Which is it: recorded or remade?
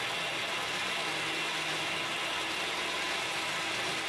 recorded